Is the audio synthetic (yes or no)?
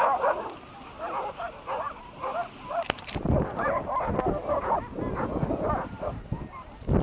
no